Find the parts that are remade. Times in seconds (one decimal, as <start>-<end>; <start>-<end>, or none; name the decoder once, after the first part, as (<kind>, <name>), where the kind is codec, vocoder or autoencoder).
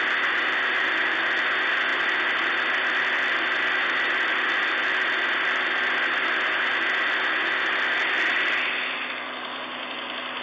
none